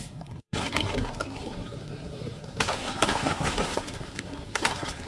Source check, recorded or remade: remade